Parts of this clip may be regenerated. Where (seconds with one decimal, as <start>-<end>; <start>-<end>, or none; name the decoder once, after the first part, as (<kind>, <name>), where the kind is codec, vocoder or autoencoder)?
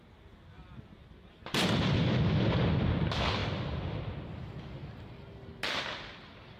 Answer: 3.4-4.6 (vocoder, BigVGAN v2)